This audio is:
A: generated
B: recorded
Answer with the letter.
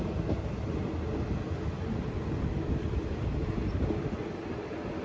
B